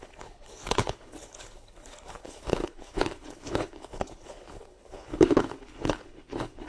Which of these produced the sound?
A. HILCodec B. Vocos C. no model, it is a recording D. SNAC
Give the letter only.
A